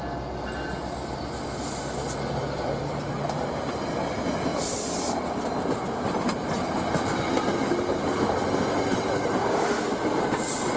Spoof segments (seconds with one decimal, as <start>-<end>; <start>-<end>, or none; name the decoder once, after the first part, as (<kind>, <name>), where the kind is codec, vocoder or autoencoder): none